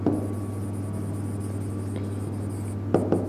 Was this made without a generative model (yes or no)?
yes